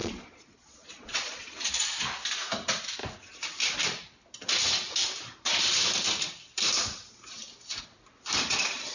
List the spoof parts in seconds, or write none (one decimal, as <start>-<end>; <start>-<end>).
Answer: 0.0-1.7